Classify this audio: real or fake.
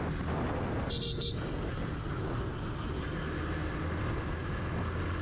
real